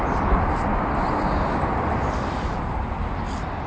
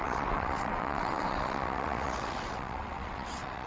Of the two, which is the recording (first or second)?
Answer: first